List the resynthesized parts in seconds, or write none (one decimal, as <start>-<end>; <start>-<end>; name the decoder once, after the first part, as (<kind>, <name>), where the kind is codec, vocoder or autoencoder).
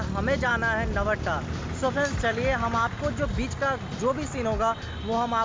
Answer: none